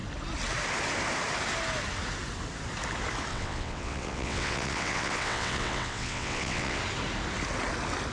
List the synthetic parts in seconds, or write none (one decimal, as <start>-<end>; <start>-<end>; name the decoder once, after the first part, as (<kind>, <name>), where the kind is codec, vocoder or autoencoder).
3.3-6.8 (vocoder, WaveNeXt)